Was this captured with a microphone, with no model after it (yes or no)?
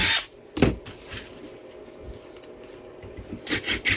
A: yes